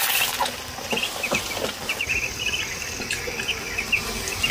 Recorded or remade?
recorded